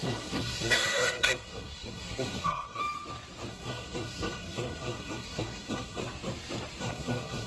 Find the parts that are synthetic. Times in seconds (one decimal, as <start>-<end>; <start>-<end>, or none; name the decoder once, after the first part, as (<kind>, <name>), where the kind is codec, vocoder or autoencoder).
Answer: 0.0-2.8 (codec, SNAC); 3.5-6.0; 6.8-7.5